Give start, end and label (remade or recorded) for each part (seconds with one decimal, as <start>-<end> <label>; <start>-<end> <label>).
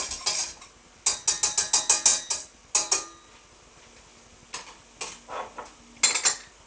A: 0.0-6.7 recorded